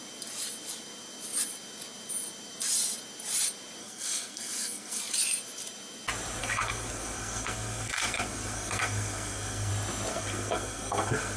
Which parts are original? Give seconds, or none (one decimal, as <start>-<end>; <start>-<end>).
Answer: 0.0-3.8; 5.0-6.4; 9.7-10.1